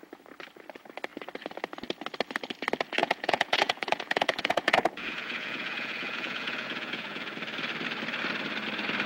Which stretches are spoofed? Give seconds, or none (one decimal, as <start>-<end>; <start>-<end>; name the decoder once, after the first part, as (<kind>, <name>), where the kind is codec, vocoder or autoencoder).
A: 3.0-7.3 (vocoder, Vocos)